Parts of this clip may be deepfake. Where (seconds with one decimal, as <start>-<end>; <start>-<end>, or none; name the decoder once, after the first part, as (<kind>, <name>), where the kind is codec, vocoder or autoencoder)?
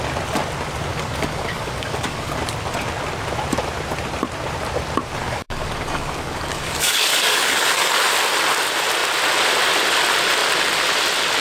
0.9-2.4 (codec, DAC); 5.2-8.0